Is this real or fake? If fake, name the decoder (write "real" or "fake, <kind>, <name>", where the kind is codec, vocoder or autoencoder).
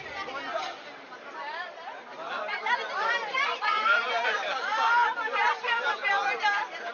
fake, vocoder, BigVGAN v2